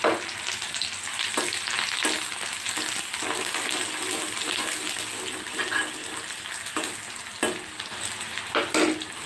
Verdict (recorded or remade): recorded